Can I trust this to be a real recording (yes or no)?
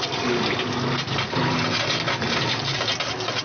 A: yes